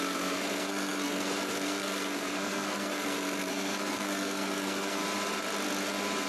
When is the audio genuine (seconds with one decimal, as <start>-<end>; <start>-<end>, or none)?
5.0-6.3